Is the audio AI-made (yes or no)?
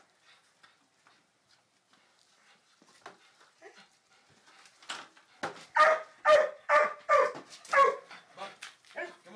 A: no